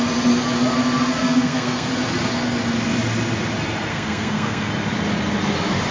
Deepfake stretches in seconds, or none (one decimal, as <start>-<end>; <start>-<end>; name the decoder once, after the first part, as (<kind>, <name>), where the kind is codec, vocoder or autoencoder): 1.2-1.9 (codec, SNAC); 3.9-4.7